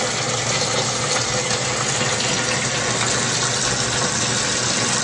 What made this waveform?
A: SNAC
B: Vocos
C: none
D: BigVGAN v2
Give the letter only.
C